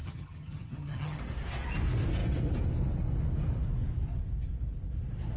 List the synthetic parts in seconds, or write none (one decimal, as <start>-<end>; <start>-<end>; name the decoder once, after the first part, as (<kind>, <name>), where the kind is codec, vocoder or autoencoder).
0.0-1.2 (vocoder, HiFi-GAN)